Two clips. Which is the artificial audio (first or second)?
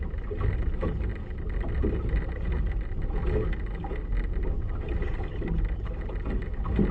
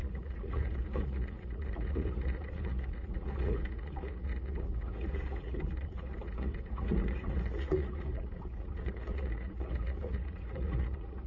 second